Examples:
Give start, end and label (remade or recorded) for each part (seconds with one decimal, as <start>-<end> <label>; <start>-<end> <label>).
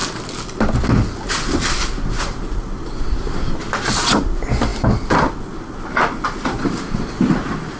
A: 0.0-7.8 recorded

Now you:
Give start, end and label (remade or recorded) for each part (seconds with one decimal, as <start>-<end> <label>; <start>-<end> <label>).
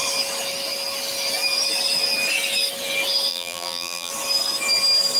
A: 0.0-3.3 recorded; 3.3-4.1 remade; 4.1-5.2 recorded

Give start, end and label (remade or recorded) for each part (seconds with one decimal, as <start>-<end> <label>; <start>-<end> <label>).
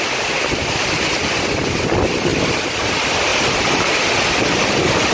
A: 0.0-2.3 recorded; 2.3-2.9 remade; 2.9-3.3 recorded; 3.3-3.8 remade; 3.8-5.1 recorded